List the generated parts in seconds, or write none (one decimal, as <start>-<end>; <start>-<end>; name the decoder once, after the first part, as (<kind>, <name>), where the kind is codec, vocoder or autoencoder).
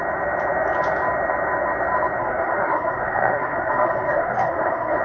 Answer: 2.2-5.0 (codec, SNAC)